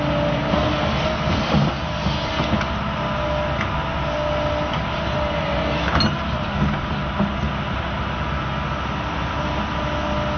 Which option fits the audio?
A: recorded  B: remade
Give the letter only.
A